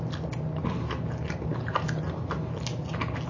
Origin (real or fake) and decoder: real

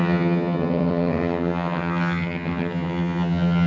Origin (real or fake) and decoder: fake, vocoder, HiFi-GAN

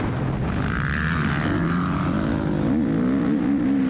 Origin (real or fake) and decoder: real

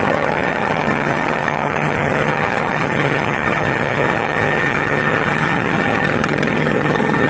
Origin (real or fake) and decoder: fake, vocoder, HiFi-GAN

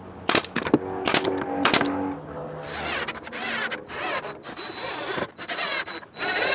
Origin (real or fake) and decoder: real